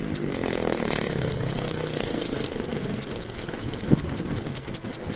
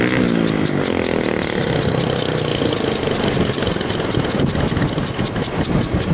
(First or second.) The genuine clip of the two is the second